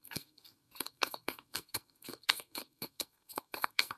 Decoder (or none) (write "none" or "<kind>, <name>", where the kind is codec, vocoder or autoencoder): codec, SNAC